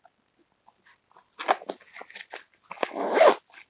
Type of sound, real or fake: real